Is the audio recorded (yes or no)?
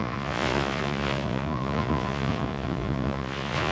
no